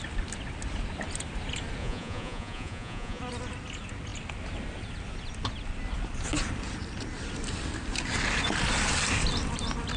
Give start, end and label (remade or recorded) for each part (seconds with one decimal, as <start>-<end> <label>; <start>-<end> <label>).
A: 0.0-1.8 recorded; 1.8-3.2 remade; 3.2-10.0 recorded